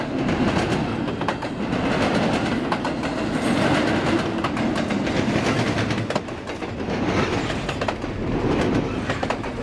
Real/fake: real